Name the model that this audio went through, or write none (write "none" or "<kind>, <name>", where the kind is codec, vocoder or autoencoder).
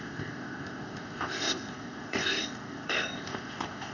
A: codec, ZipCodec